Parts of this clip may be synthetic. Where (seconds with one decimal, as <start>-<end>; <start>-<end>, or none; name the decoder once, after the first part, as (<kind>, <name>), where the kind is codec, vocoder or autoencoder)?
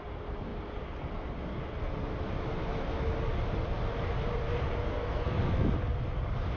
4.9-5.7 (codec, SNAC)